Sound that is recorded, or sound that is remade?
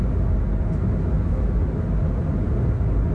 recorded